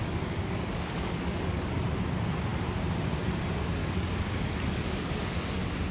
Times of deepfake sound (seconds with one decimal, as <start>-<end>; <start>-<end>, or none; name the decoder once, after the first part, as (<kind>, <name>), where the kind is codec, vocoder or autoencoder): 0.0-1.7 (codec, DAC); 3.8-5.3